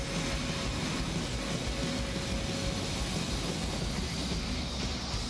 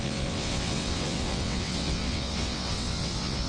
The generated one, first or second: second